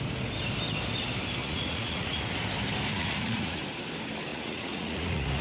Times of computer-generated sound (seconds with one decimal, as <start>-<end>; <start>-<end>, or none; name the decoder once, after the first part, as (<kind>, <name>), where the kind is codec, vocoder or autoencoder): 1.4-2.2 (vocoder, Vocos); 2.9-3.6; 4.3-5.4